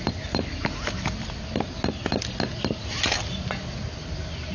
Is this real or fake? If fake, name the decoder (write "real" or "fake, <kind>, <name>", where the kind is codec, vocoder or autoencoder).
real